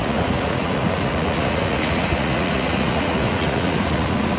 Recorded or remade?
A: remade